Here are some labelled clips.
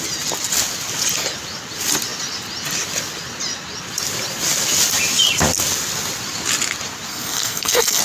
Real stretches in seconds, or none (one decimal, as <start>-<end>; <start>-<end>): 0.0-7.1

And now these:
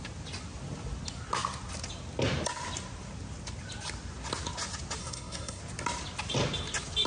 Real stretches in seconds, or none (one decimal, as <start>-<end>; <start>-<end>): 0.0-5.0; 5.6-7.1

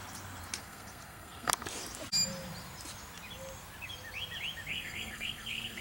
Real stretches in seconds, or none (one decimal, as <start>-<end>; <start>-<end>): 0.0-0.6; 1.5-4.7

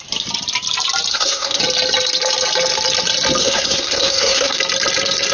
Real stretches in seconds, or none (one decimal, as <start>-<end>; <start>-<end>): 0.0-1.1; 1.6-3.4; 4.6-5.3

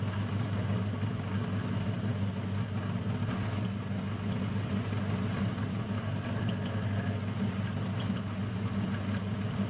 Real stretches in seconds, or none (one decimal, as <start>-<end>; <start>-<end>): 0.0-9.7

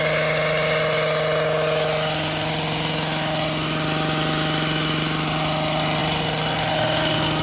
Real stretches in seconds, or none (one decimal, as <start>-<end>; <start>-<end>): 0.0-7.4